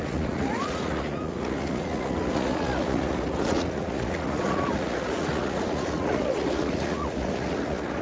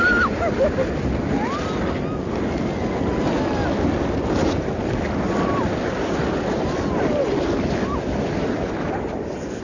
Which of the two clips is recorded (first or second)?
second